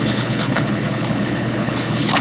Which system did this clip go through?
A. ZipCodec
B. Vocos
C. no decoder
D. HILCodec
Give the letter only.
D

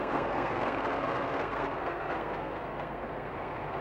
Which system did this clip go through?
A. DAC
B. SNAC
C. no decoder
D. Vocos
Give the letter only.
B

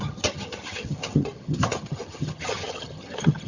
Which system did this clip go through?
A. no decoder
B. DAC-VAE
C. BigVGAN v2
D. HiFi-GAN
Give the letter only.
D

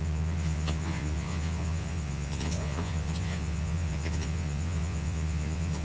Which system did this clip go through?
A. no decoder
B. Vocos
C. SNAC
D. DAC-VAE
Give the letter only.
B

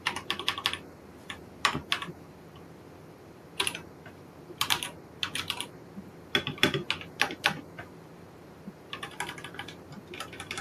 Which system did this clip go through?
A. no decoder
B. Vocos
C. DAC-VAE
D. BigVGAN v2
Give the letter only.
D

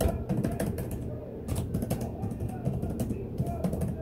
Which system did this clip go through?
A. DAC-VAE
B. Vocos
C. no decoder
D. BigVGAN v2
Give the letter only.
C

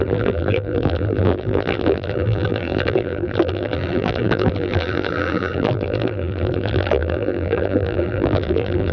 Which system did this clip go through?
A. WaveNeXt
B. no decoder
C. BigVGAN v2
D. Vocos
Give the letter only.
C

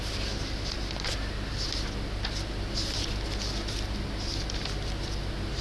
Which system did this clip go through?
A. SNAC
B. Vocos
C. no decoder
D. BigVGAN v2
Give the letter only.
C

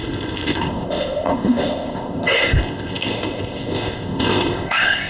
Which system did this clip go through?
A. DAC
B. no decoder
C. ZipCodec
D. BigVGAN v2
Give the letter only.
C